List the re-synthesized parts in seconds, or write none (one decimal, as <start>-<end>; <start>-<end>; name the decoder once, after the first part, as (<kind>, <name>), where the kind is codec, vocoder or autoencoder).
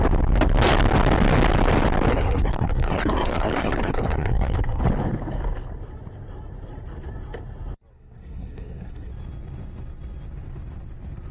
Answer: 2.1-4.8 (codec, SNAC); 7.9-9.1